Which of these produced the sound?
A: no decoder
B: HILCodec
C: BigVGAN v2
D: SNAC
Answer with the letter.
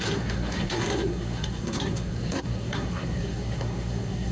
D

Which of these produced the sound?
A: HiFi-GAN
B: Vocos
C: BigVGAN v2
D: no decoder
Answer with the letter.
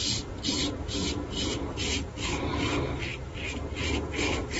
D